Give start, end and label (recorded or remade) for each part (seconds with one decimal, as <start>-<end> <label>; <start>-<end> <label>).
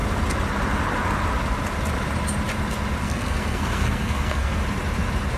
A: 0.0-3.0 recorded; 3.0-4.6 remade; 4.6-5.4 recorded